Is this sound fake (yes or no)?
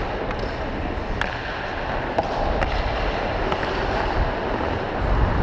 no